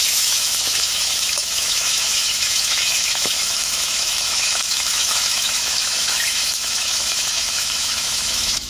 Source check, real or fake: fake